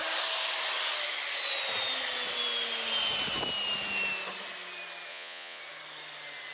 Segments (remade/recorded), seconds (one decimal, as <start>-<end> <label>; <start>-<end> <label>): 0.0-5.1 recorded; 5.1-5.6 remade; 5.6-6.5 recorded